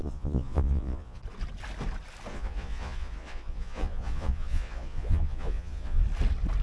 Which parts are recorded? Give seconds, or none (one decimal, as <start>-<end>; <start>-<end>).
1.2-2.3; 6.0-6.6